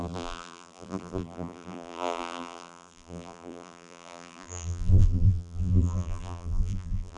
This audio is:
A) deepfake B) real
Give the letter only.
A